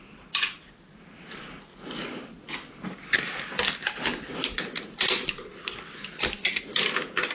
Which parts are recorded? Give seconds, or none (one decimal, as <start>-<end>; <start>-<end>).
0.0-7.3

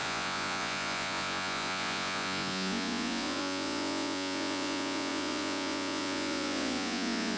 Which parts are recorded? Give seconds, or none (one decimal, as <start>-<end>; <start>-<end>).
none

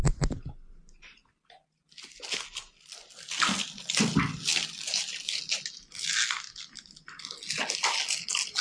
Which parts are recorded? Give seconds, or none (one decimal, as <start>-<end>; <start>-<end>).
0.0-8.6

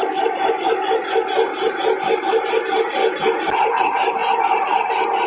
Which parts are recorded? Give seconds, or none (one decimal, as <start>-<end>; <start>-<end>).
0.0-1.5; 2.5-3.0; 3.8-5.3

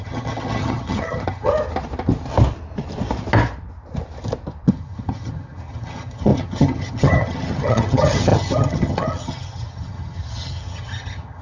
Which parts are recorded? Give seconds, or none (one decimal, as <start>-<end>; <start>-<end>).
1.5-4.7

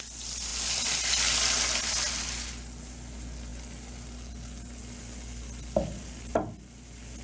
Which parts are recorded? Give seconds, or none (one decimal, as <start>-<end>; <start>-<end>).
0.0-7.2

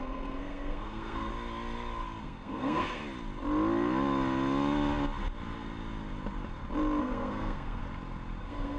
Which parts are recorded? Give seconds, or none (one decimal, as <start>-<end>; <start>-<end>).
1.3-2.2; 3.0-7.0; 7.8-8.4